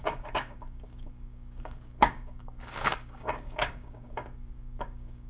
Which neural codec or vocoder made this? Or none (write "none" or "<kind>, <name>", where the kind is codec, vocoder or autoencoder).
codec, DAC